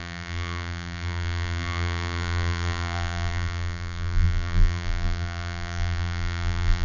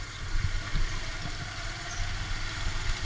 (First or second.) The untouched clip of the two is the second